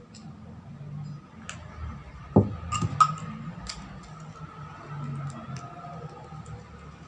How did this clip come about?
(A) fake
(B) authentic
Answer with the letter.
B